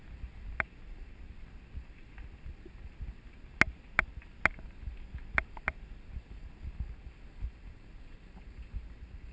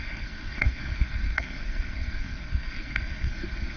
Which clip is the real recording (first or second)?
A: first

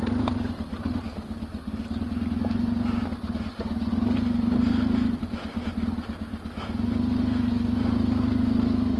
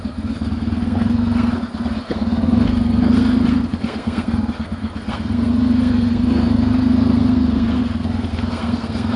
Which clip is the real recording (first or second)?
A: first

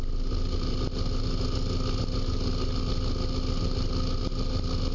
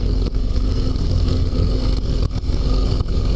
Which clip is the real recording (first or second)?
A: first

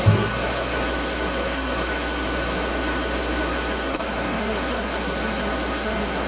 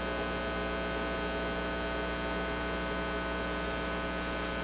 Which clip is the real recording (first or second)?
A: second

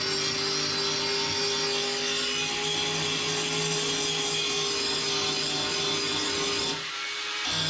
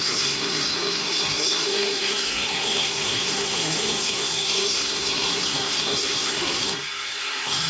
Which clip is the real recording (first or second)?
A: first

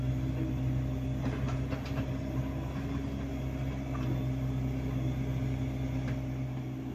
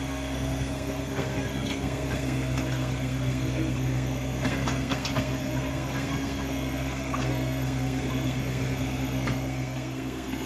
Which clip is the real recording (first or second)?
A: first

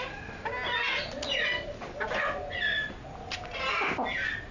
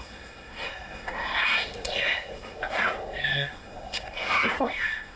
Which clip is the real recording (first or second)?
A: first